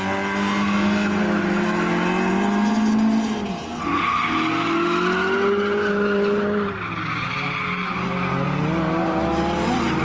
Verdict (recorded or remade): recorded